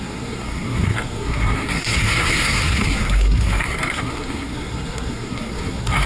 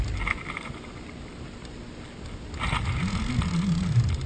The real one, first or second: second